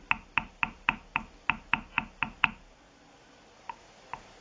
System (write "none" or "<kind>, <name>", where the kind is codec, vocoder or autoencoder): none